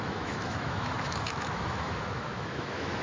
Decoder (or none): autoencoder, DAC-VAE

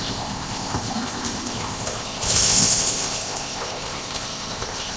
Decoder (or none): codec, ZipCodec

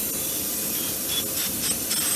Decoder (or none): none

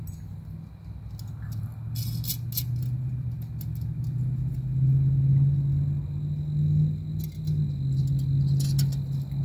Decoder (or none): none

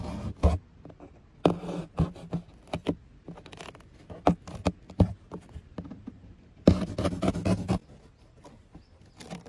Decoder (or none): none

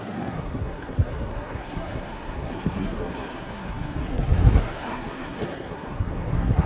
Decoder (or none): codec, SNAC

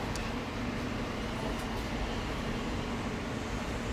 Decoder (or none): none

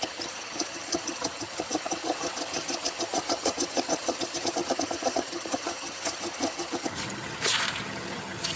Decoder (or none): vocoder, HiFi-GAN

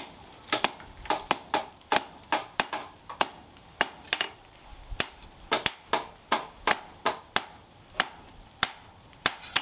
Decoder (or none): none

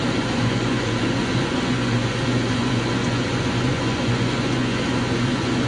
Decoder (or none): vocoder, Vocos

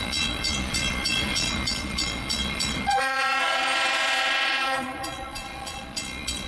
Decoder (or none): vocoder, Vocos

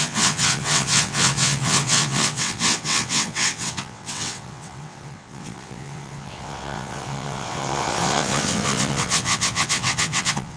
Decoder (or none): vocoder, WaveNeXt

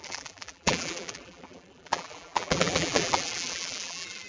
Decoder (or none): vocoder, BigVGAN v2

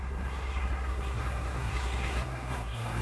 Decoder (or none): codec, SNAC